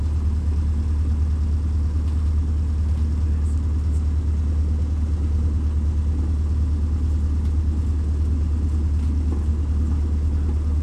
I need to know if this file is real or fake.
real